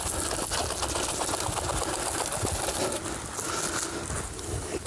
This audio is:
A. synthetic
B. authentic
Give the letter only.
B